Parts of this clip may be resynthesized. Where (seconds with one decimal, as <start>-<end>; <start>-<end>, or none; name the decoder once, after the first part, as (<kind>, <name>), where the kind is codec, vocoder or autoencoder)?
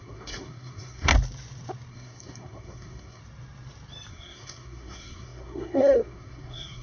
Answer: 0.0-1.1 (codec, SNAC); 1.9-3.2; 4.1-6.8